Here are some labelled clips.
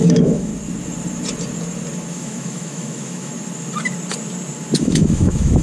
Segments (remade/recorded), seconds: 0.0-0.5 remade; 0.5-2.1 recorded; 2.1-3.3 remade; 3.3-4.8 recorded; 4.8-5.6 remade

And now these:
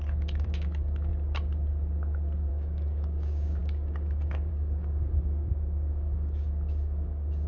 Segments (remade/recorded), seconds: 0.0-1.1 remade; 1.1-2.5 recorded; 2.5-7.5 remade